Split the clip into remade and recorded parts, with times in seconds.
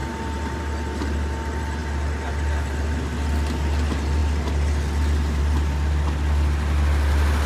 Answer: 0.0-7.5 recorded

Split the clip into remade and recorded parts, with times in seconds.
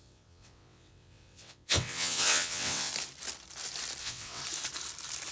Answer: 0.0-2.9 remade; 2.9-4.0 recorded; 4.0-4.4 remade; 4.4-5.3 recorded